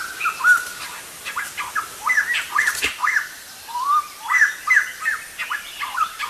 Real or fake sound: real